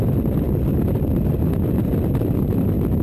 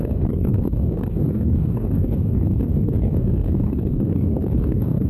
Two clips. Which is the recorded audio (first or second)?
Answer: first